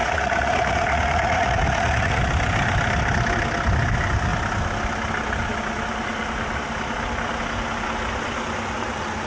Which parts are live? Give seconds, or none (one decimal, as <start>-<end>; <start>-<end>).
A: 2.2-9.3